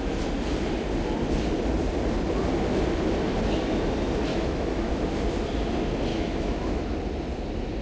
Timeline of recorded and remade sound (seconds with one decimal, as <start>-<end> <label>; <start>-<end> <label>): 0.0-4.3 recorded; 4.3-4.9 remade; 4.9-6.1 recorded; 6.1-6.9 remade; 6.9-7.8 recorded